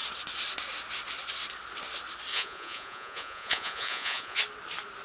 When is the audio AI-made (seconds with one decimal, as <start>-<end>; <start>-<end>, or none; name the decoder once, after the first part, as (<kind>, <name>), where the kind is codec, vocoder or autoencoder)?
2.3-4.4 (vocoder, Vocos)